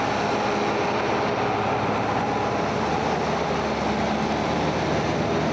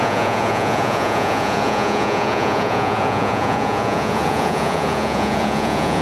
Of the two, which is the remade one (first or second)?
second